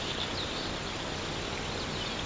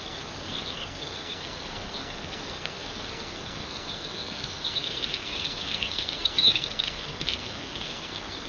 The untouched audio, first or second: first